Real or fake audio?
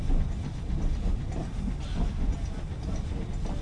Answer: real